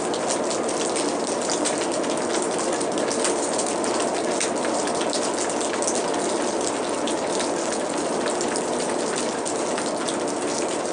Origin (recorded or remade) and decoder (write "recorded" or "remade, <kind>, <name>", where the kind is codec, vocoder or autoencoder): recorded